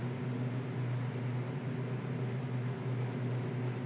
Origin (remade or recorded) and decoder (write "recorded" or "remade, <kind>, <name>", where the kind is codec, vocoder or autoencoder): recorded